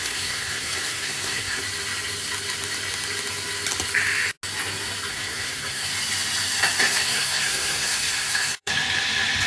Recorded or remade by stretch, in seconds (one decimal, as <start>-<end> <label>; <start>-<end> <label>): 0.0-1.6 remade; 1.6-5.1 recorded; 5.1-5.9 remade; 5.9-6.8 recorded; 6.8-8.7 remade; 8.7-9.5 recorded